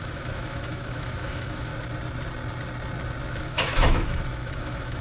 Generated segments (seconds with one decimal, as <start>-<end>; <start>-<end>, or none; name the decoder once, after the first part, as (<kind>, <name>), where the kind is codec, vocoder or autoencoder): 0.0-1.7 (autoencoder, DAC-VAE); 3.3-5.0